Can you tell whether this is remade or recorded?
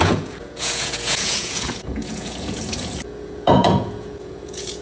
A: remade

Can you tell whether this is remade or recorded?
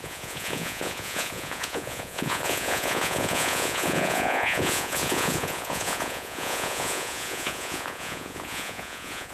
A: remade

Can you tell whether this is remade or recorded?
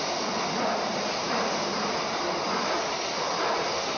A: recorded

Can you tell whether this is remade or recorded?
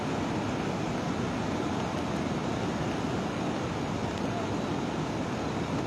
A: recorded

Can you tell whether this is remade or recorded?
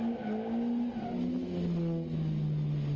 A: recorded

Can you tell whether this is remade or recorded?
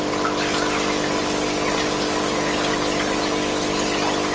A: recorded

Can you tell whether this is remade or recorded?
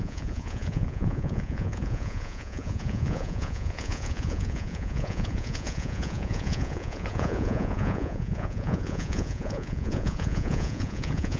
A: remade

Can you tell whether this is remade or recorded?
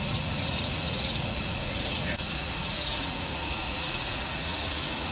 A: remade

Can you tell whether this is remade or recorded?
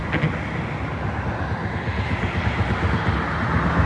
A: recorded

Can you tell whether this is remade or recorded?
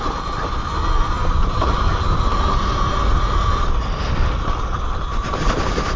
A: recorded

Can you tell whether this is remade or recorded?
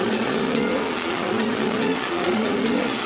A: remade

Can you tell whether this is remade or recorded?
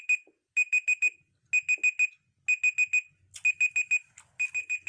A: recorded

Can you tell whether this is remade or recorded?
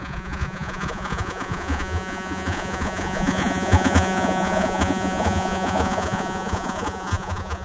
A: remade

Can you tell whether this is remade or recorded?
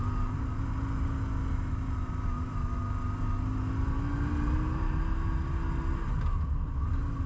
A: recorded